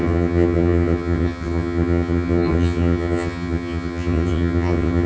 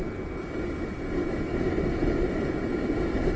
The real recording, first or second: second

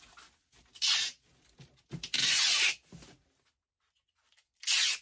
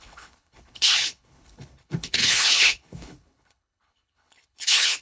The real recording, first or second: first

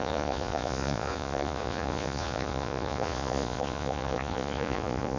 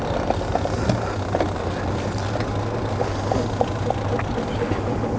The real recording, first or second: second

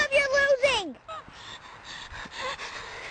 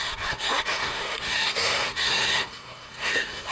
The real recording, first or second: first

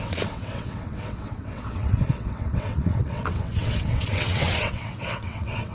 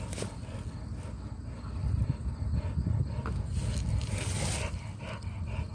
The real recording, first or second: second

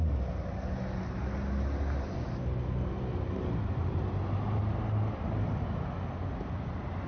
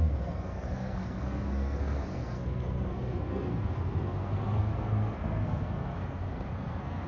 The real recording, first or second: first